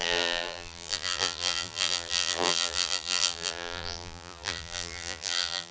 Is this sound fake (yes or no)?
yes